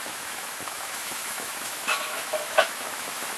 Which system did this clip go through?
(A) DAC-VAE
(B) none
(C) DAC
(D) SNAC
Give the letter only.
A